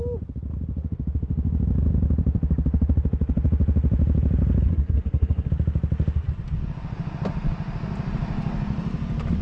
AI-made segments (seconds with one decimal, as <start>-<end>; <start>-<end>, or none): 4.7-5.5